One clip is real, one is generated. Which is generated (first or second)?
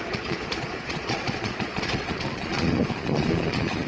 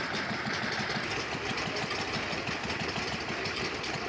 first